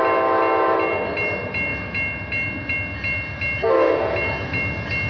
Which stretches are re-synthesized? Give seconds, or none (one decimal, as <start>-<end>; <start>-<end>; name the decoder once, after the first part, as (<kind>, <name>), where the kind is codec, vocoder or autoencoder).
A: none